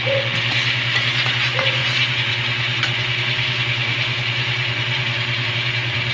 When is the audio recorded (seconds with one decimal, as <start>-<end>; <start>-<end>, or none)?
none